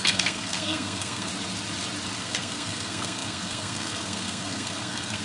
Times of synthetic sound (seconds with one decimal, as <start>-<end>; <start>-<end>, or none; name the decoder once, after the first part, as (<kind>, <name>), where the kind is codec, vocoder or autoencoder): 0.0-1.3 (codec, SNAC); 2.2-5.2